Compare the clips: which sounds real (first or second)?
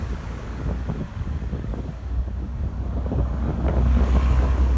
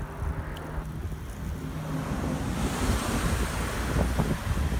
second